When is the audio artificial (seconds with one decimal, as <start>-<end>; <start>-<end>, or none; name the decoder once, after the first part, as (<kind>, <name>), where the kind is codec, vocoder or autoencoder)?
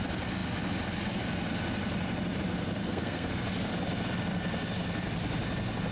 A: 2.8-3.3 (codec, SNAC)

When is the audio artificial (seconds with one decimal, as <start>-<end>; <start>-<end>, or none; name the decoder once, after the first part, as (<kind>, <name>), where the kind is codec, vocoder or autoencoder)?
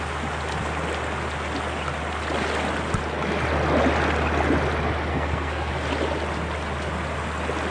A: 5.1-5.7 (codec, SNAC)